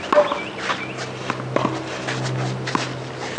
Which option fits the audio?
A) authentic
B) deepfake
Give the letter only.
A